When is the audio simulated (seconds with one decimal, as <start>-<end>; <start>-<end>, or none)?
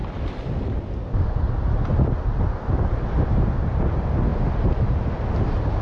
none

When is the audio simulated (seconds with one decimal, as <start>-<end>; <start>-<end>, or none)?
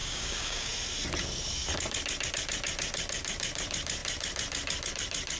0.0-0.7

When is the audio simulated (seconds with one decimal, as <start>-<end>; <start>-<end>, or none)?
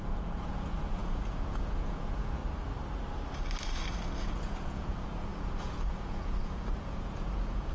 0.0-2.4; 4.2-7.7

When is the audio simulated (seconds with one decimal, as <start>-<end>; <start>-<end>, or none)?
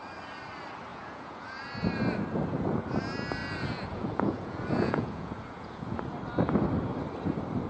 0.9-1.7; 3.4-6.0